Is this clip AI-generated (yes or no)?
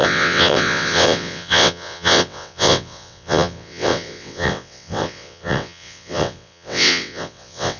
yes